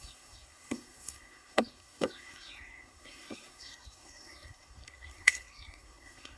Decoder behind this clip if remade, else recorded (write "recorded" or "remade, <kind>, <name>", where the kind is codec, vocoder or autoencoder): remade, codec, SNAC